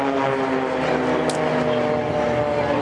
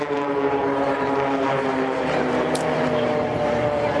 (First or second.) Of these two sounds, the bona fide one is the first